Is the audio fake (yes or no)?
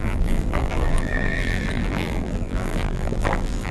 yes